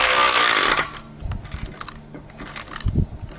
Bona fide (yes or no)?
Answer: yes